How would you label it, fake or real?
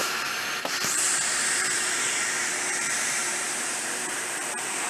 fake